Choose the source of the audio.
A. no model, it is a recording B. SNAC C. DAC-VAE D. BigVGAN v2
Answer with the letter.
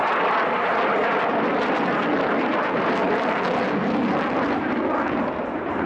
D